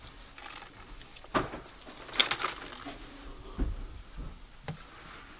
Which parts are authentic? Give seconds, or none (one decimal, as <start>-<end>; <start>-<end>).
0.0-5.4